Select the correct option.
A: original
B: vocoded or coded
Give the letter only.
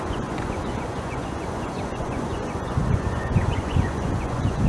B